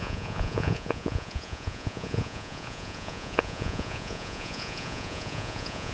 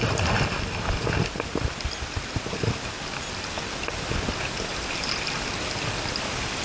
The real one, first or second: second